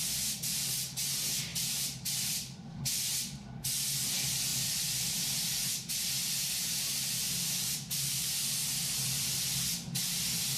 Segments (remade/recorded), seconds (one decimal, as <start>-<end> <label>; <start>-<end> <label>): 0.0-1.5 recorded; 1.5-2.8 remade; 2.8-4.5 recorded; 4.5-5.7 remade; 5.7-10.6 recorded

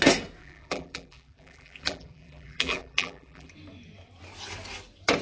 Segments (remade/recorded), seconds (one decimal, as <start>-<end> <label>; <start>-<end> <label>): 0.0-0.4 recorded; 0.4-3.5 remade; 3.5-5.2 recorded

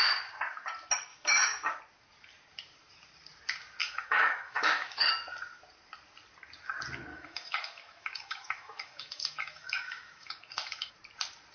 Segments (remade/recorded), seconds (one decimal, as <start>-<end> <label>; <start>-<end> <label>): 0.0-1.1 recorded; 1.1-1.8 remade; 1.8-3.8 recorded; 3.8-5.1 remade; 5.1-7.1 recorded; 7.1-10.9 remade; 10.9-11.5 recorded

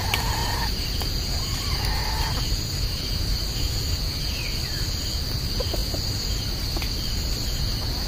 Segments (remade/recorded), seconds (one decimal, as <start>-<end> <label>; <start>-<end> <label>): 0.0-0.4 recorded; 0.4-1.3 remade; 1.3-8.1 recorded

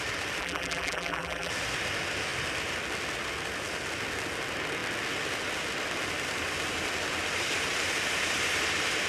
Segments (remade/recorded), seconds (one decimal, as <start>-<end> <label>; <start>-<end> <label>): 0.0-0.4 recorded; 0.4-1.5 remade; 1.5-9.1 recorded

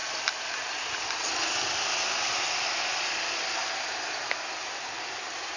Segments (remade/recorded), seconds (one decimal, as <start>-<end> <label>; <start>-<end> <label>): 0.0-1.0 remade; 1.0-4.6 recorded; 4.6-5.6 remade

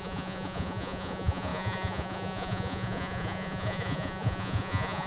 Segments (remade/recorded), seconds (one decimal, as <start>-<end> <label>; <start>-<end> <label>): 0.0-5.1 remade

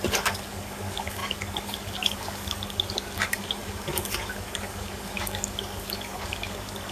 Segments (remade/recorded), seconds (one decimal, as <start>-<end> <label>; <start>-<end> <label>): 0.0-6.9 remade